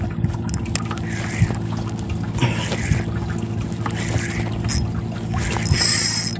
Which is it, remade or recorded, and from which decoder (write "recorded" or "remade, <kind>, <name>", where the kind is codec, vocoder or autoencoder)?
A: recorded